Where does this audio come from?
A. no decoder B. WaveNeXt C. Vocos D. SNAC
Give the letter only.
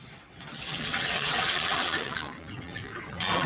B